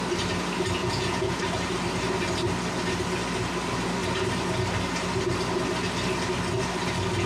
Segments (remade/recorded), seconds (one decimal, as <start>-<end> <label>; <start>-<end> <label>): 0.0-0.8 recorded; 0.8-1.4 remade; 1.4-7.3 recorded